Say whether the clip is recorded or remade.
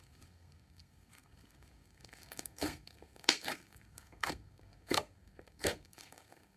remade